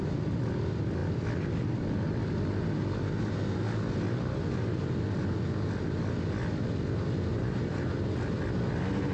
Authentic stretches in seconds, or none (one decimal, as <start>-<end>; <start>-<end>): 0.0-7.3; 7.9-9.1